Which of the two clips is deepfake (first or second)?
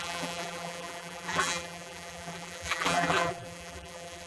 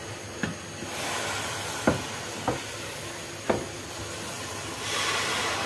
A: first